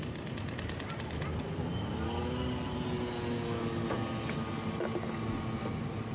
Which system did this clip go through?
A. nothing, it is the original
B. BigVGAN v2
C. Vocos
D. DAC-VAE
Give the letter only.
A